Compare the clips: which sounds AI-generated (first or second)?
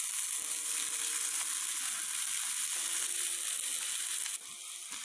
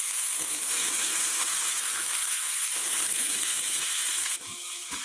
second